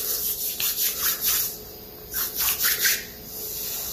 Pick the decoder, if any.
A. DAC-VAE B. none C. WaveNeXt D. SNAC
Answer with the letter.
B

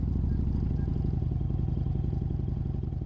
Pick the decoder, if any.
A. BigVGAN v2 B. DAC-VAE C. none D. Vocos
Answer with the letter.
C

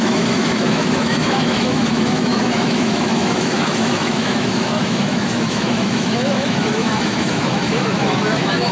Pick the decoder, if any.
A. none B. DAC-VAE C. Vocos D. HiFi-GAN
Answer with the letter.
B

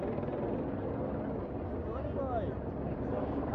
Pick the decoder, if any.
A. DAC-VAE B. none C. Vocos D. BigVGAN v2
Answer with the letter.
B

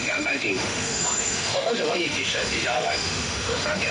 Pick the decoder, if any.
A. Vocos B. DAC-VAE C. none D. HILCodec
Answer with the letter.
B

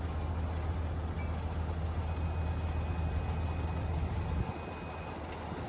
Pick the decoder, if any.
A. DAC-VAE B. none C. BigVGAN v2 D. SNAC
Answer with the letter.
B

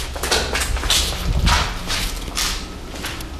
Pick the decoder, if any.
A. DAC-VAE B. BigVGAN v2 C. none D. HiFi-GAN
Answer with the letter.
C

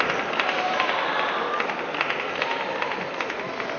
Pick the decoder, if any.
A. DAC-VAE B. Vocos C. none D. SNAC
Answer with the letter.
C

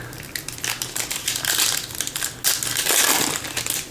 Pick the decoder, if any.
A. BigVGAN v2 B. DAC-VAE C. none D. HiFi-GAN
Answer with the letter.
C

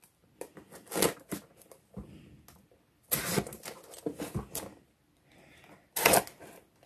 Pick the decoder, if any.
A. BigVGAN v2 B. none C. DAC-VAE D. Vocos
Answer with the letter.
B